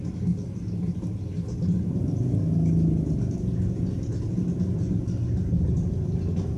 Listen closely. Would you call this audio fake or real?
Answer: real